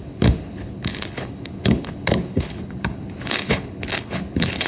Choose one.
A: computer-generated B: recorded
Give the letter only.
A